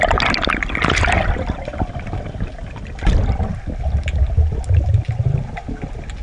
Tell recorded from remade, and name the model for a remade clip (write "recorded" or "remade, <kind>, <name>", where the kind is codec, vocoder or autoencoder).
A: recorded